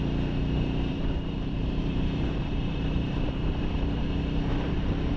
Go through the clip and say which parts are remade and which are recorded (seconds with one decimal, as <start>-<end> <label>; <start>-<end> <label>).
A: 0.0-0.9 recorded; 0.9-4.0 remade; 4.0-5.2 recorded